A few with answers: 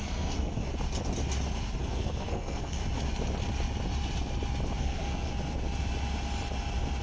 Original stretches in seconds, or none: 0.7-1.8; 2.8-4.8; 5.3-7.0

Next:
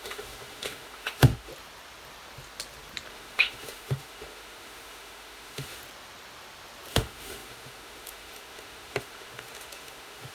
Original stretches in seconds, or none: 1.5-3.1; 5.8-6.9

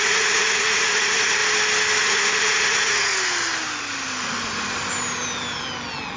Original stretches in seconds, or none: 1.4-2.0; 3.1-6.2

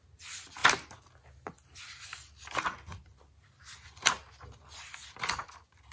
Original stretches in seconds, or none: 0.0-5.9